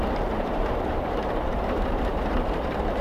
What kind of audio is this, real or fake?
fake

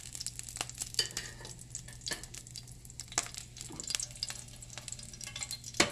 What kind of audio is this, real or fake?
real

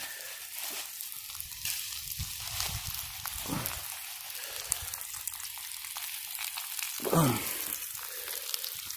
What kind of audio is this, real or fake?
real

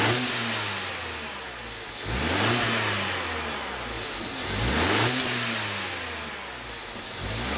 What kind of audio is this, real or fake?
real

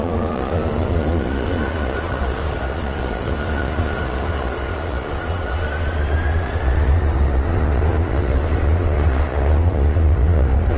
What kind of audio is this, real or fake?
fake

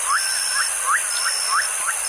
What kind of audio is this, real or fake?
real